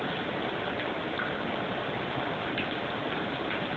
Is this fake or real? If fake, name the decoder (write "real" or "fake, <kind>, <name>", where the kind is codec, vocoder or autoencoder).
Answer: real